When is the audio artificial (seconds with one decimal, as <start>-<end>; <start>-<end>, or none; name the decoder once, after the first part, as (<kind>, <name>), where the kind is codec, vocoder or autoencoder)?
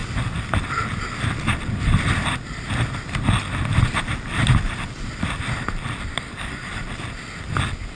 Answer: 6.1-6.8 (codec, DAC)